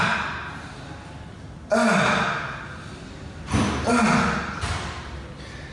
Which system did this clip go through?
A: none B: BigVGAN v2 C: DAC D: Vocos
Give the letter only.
A